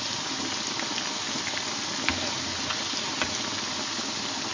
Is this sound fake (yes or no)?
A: no